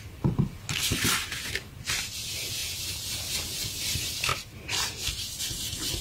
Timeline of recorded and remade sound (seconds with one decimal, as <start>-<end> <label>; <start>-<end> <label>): 0.0-6.0 recorded